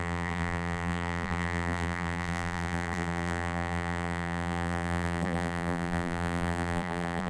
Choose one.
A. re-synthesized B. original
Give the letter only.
A